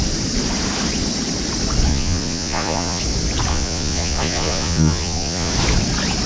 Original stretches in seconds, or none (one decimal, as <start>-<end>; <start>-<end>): 0.0-1.9; 3.0-3.5; 5.5-6.3